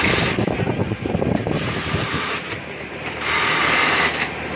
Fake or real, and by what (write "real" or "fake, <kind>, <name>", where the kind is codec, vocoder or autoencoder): fake, vocoder, BigVGAN v2